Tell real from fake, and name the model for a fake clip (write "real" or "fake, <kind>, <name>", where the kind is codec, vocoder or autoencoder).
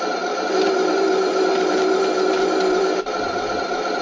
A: fake, vocoder, BigVGAN v2